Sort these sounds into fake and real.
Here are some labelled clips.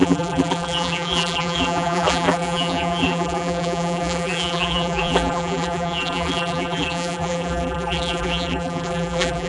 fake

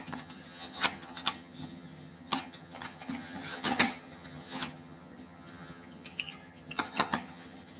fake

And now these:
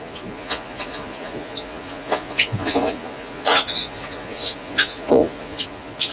fake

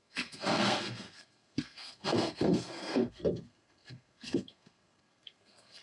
fake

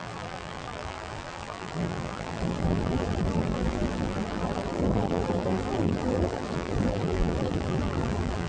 fake